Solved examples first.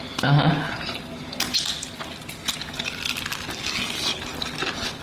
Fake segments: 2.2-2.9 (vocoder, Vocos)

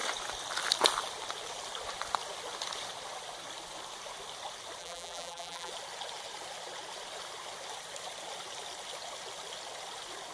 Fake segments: 4.8-5.7 (vocoder, BigVGAN v2)

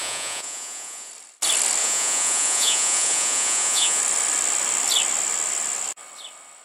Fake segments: 0.0-1.1 (vocoder, Vocos); 1.8-4.0

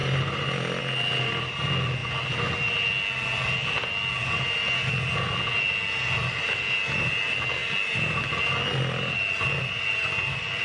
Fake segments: none